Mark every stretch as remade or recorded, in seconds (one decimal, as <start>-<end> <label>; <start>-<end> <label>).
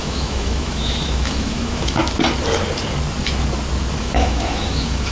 0.0-2.0 remade; 2.0-4.0 recorded; 4.0-5.1 remade